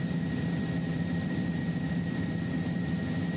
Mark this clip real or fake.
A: fake